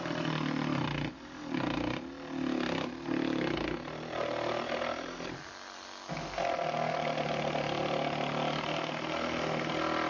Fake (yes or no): no